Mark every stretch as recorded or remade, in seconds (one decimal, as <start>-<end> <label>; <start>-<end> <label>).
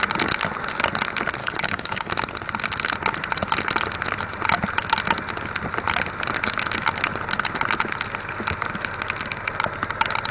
0.0-1.4 recorded; 1.4-2.1 remade; 2.1-10.3 recorded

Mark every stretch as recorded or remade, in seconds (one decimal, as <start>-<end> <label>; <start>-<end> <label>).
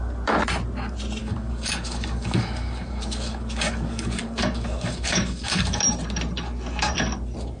0.0-1.2 recorded; 1.2-5.8 remade; 5.8-7.6 recorded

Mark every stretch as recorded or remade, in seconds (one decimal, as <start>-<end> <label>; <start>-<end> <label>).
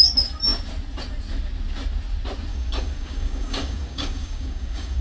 0.0-2.5 recorded; 2.5-5.0 remade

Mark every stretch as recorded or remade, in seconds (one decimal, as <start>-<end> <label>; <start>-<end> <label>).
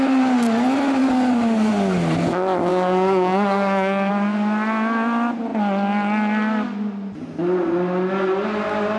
0.0-1.0 recorded; 1.0-1.7 remade; 1.7-2.7 recorded; 2.7-4.1 remade; 4.1-9.0 recorded